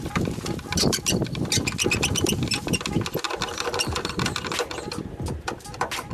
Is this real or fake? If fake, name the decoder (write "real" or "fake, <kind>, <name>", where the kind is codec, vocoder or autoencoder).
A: real